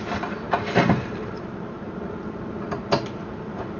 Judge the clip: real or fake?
fake